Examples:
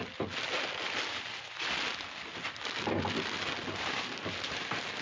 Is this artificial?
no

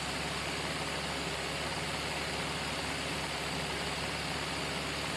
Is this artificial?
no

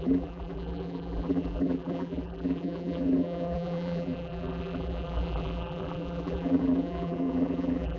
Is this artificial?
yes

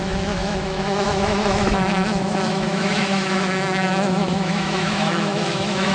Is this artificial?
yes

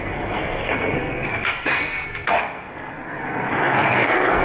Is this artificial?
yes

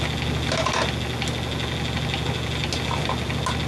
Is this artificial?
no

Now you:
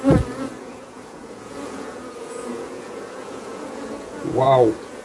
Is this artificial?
yes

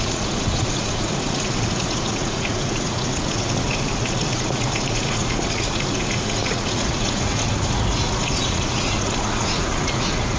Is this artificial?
yes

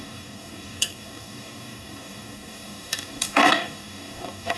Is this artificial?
yes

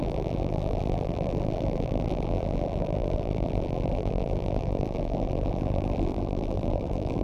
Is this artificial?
yes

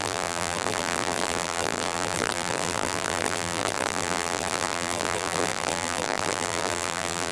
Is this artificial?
yes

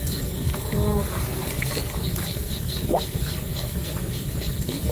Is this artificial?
yes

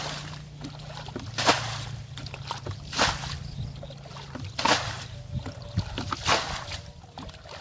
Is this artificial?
no